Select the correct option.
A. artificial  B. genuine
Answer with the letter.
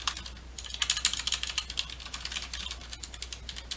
B